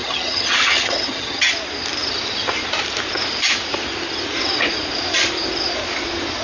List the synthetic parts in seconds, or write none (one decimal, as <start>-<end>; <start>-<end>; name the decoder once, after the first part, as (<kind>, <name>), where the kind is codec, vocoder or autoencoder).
0.0-1.5 (vocoder, HiFi-GAN)